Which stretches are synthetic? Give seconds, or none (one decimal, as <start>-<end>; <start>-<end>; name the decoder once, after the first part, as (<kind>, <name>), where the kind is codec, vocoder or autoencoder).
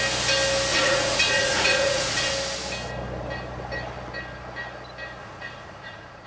0.7-2.3 (vocoder, Vocos); 5.2-6.3